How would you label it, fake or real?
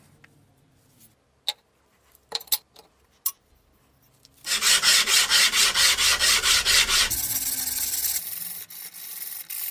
real